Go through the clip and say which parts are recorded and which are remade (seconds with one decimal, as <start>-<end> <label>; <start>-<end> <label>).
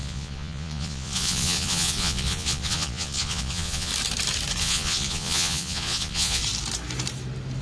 0.0-3.9 remade; 3.9-4.6 recorded; 4.6-6.4 remade; 6.4-7.6 recorded